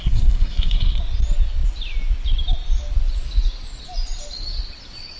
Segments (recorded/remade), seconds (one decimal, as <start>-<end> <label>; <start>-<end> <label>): 0.0-1.0 remade; 1.0-5.2 recorded